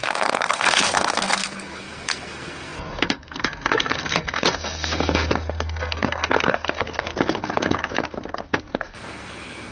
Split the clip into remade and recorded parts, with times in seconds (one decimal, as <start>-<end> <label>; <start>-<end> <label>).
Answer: 0.0-9.7 remade